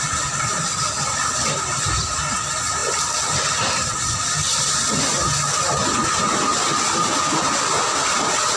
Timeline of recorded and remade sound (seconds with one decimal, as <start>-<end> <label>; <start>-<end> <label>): 0.0-8.6 recorded